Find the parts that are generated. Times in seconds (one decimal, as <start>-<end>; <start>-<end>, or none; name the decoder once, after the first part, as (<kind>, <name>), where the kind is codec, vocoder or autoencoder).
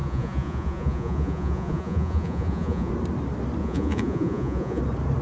0.0-2.9 (vocoder, Vocos); 3.6-4.8